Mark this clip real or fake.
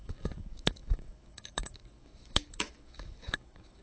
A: fake